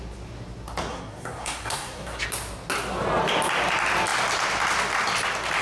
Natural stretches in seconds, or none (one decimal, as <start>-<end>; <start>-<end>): 0.0-0.9; 2.2-5.6